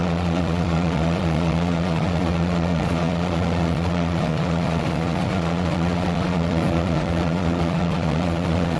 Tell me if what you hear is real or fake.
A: fake